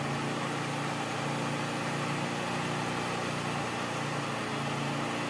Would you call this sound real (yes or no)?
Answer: yes